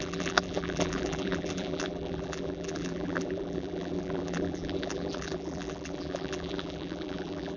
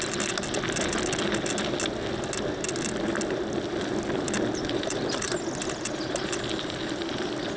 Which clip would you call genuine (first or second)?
second